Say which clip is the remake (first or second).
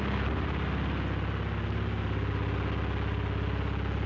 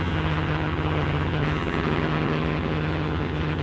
second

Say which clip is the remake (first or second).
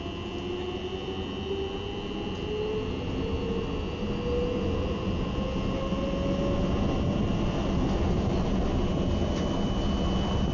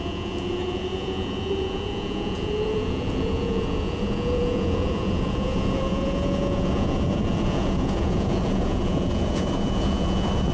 second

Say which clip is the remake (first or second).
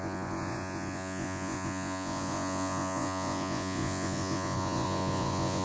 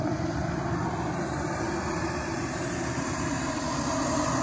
first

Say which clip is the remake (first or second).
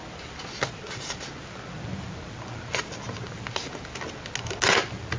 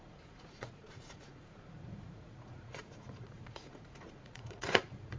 second